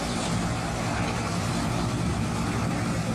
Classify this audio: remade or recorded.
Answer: recorded